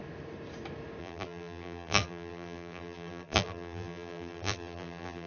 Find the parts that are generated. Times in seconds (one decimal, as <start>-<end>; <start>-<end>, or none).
1.0-5.3

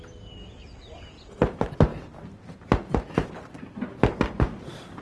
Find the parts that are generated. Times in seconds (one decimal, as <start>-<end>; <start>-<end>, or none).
none

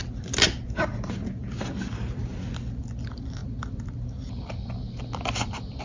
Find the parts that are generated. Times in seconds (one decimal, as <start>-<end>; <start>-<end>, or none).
none

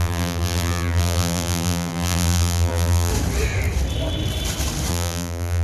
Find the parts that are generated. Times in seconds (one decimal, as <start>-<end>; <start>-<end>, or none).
0.0-3.1; 4.9-5.6

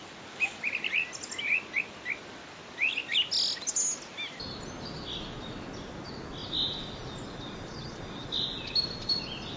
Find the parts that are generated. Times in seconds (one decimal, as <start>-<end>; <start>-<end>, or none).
none

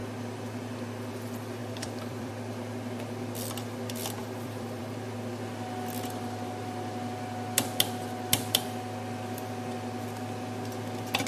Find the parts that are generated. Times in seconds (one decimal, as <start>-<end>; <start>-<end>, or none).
1.6-2.3; 4.2-4.9